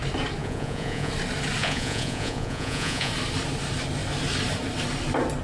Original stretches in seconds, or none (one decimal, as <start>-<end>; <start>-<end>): 0.0-0.4; 1.1-1.6; 3.1-5.4